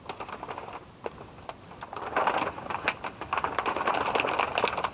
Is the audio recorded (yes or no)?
yes